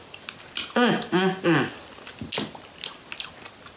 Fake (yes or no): no